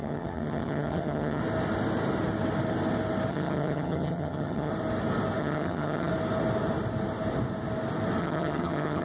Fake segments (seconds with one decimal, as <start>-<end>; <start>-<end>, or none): 0.0-1.4; 3.3-4.7; 5.4-6.1; 8.2-9.0